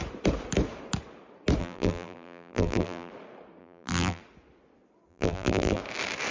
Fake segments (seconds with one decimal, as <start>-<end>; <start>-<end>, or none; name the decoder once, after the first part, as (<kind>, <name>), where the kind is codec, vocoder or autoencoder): 1.6-3.1 (vocoder, BigVGAN v2); 3.6-4.2; 5.1-5.8